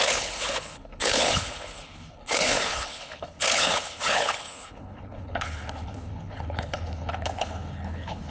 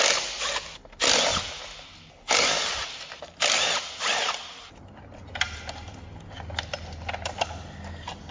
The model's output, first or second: first